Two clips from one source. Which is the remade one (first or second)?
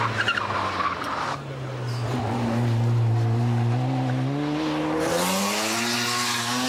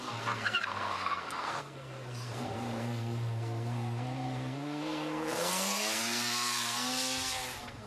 second